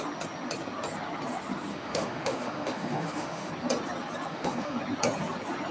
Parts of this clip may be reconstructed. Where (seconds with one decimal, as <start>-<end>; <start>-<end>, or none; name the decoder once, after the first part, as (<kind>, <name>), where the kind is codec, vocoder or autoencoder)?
1.7-3.5 (autoencoder, DAC-VAE); 4.3-4.8